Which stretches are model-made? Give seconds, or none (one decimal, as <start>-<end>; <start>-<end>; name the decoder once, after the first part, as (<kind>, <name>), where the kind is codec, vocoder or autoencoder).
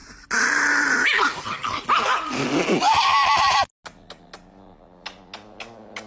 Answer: none